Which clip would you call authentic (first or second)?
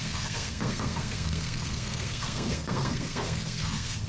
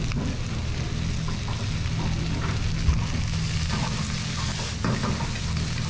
second